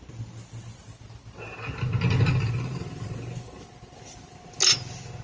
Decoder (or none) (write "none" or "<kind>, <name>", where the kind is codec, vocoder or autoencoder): none